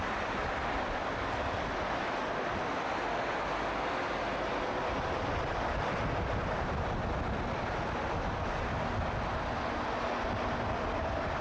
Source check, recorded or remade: recorded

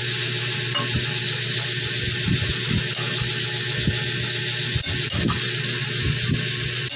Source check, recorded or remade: recorded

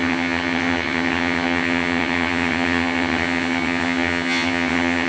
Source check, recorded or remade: remade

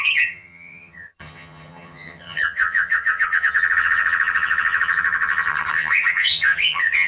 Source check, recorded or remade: remade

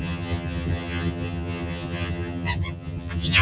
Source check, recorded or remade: remade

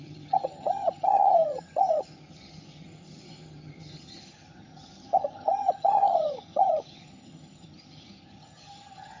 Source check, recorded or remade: remade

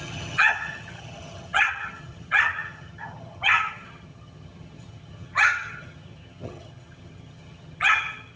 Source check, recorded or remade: remade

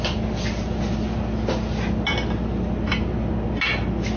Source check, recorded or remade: recorded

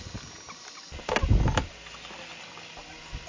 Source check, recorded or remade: recorded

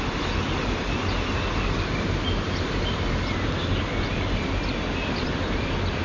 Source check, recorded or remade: recorded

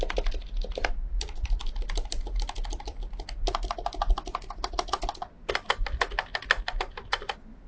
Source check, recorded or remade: recorded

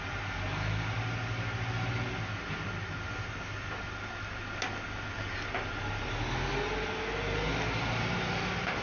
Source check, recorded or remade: recorded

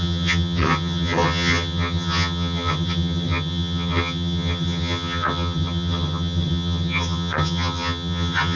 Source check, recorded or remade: remade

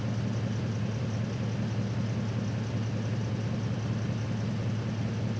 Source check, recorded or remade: recorded